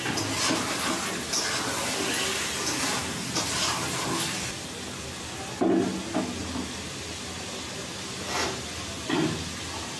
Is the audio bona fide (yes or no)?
yes